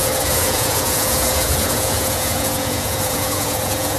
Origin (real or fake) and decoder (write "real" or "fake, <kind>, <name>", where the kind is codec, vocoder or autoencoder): fake, vocoder, Vocos